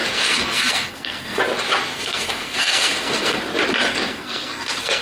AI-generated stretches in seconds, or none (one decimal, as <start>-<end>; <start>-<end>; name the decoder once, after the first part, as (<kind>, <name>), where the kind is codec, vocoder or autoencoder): 0.0-1.4 (codec, SNAC); 1.9-3.4; 3.9-5.0